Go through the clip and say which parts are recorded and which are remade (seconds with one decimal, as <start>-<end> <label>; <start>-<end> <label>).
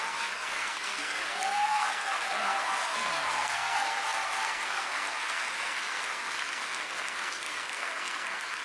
0.0-8.6 remade